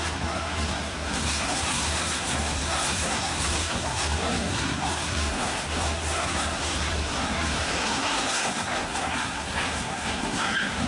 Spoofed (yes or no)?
yes